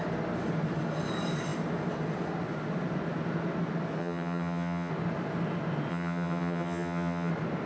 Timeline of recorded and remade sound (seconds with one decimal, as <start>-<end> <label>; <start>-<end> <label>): 0.0-4.0 recorded; 4.0-4.9 remade; 4.9-5.9 recorded; 5.9-7.3 remade; 7.3-7.7 recorded